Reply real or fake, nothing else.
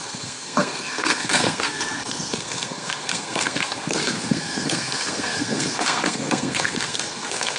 fake